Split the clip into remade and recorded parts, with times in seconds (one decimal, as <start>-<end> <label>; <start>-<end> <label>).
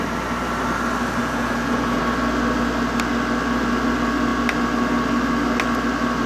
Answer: 0.0-1.2 recorded; 1.2-2.0 remade; 2.0-6.3 recorded